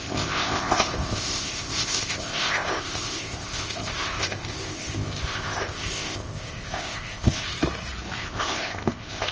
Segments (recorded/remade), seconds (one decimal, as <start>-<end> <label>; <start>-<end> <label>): 0.0-7.5 remade; 7.5-8.2 recorded; 8.2-9.3 remade